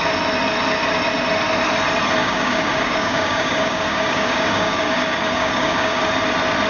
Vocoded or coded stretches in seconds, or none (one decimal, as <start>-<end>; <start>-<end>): 2.2-6.0